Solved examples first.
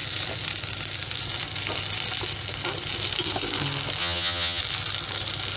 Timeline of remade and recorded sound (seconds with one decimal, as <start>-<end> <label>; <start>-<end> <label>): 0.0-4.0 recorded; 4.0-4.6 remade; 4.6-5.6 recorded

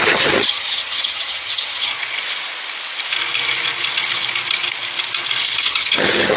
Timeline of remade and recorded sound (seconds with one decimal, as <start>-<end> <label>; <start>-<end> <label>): 0.0-1.9 remade; 1.9-5.7 recorded; 5.7-6.4 remade

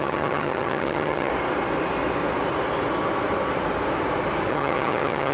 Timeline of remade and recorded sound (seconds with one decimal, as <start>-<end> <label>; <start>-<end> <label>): 0.0-1.3 remade; 1.3-4.5 recorded; 4.5-5.3 remade

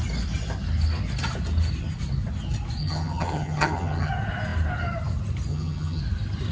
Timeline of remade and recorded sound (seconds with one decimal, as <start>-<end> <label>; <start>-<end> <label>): 0.0-2.8 recorded; 2.8-4.1 remade; 4.1-5.5 recorded; 5.5-6.0 remade; 6.0-6.5 recorded

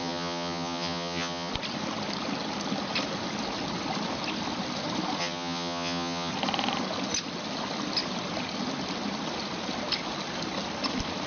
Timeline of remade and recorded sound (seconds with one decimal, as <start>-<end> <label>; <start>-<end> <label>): 0.0-1.5 remade; 1.5-5.2 recorded; 5.2-6.3 remade; 6.3-11.3 recorded